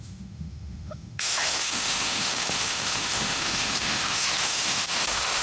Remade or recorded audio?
remade